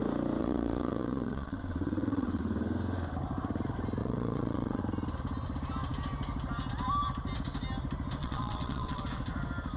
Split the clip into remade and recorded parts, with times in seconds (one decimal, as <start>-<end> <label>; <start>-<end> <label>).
0.0-0.4 recorded; 0.4-2.4 remade; 2.4-4.0 recorded; 4.0-4.8 remade; 4.8-8.2 recorded; 8.2-9.0 remade; 9.0-9.8 recorded